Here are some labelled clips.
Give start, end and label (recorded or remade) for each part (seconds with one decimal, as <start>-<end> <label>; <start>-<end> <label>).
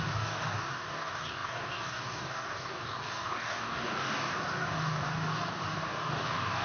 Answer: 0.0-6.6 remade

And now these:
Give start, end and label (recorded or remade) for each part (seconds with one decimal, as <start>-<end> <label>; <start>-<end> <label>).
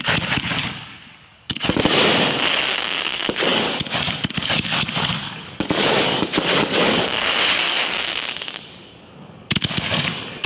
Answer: 0.0-1.8 remade; 1.8-2.5 recorded; 2.5-10.5 remade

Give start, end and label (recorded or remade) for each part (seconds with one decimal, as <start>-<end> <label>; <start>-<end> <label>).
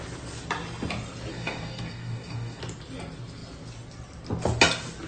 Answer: 0.0-1.3 recorded; 1.3-2.6 remade; 2.6-5.1 recorded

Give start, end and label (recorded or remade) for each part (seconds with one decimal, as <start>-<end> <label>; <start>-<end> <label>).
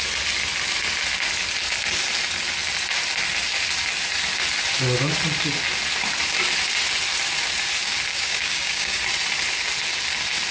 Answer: 0.0-8.1 recorded; 8.1-9.0 remade; 9.0-10.5 recorded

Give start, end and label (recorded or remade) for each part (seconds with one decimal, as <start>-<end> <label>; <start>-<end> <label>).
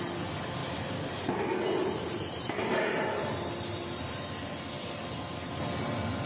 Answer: 0.0-6.2 recorded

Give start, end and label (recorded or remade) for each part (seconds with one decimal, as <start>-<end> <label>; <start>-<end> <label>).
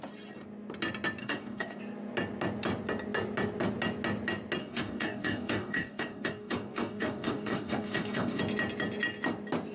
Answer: 0.0-1.2 recorded; 1.2-1.8 remade; 1.8-4.6 recorded; 4.6-8.4 remade; 8.4-9.7 recorded